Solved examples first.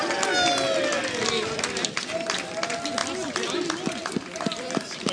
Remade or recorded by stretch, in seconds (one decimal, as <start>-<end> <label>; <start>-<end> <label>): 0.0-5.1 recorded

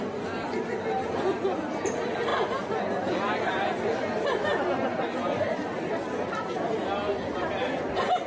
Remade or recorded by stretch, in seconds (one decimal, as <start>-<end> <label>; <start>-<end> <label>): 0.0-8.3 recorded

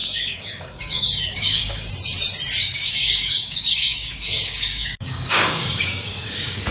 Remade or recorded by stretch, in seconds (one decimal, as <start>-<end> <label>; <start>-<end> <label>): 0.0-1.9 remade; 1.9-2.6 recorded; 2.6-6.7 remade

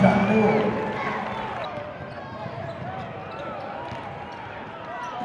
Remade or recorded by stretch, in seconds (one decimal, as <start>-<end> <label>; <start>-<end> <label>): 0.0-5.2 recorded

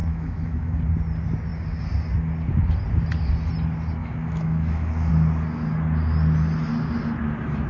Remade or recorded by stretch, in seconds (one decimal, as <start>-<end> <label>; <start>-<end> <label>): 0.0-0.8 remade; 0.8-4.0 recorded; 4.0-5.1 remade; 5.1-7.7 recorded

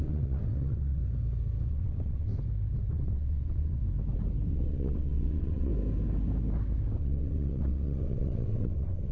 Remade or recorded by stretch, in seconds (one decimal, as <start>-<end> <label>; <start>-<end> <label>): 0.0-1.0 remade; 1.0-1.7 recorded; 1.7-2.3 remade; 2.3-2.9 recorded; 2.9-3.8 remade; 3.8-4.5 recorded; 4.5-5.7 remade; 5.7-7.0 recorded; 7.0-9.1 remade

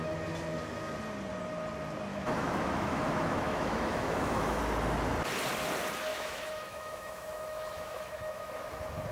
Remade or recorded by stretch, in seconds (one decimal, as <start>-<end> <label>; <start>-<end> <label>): 0.0-2.1 recorded; 2.1-4.6 remade; 4.6-6.1 recorded; 6.1-8.5 remade; 8.5-9.1 recorded

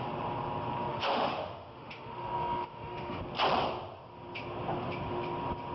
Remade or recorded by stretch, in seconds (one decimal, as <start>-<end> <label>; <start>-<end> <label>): 0.0-0.9 recorded; 0.9-3.2 remade; 3.2-5.7 recorded